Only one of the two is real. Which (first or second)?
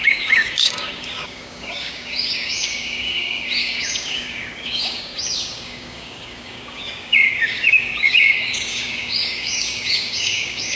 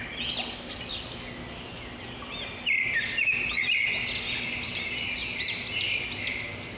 second